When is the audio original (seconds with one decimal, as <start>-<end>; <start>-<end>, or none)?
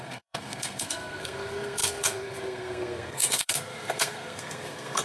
none